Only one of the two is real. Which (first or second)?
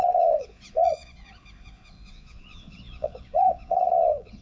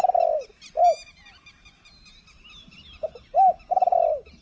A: second